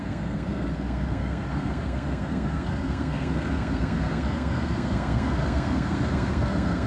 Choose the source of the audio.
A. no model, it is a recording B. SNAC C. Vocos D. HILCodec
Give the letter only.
B